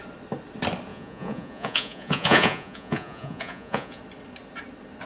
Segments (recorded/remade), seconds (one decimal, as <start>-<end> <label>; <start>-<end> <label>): 0.0-0.9 recorded; 0.9-4.0 remade; 4.0-5.1 recorded